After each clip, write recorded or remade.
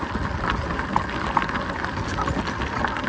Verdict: recorded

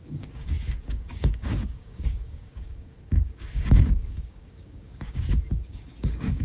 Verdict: remade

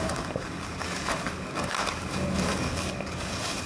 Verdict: remade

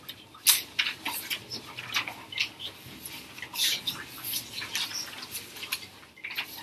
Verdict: recorded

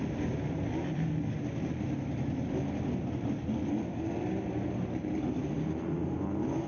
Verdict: recorded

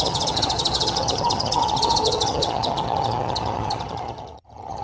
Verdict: remade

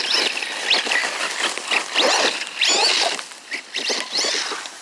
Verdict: recorded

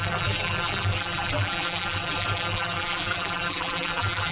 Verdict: remade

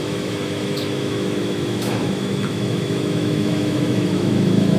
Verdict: remade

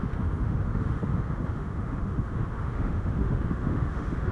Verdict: remade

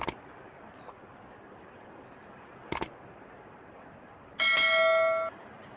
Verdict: recorded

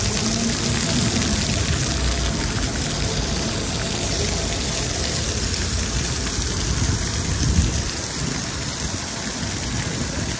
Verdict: recorded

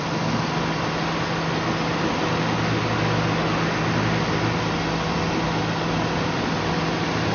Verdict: recorded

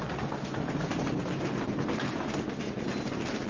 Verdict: recorded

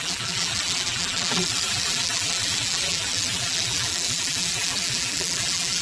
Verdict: remade